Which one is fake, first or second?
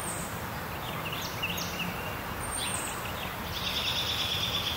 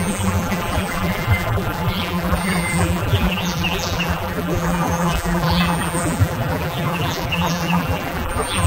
second